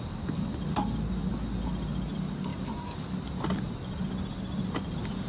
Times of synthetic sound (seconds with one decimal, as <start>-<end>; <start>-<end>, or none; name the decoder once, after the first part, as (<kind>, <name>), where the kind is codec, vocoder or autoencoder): none